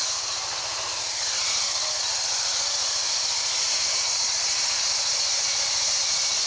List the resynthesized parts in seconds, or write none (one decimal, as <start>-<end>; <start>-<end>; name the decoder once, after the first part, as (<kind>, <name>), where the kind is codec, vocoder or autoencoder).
none